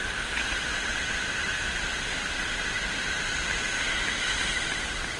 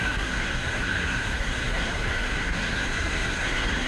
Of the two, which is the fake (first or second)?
second